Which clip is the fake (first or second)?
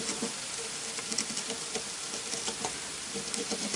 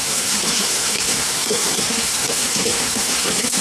second